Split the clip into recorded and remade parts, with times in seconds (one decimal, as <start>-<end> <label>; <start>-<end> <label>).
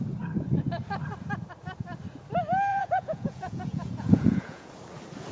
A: 0.0-2.7 recorded; 2.7-4.7 remade; 4.7-5.3 recorded